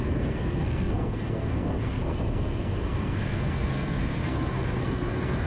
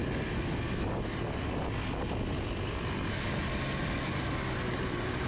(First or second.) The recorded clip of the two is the second